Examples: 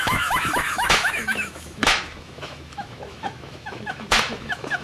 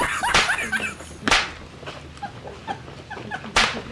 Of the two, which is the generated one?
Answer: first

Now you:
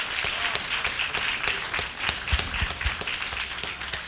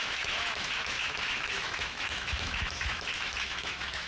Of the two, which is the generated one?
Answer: second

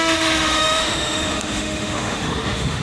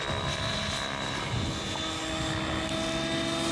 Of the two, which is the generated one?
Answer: first